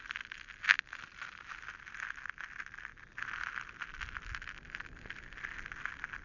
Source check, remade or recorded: recorded